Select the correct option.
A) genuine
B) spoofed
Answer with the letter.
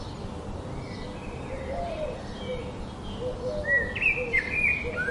A